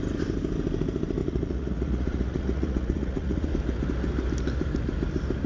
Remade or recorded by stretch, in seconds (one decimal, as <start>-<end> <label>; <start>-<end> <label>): 0.0-1.2 recorded; 1.2-3.5 remade; 3.5-5.5 recorded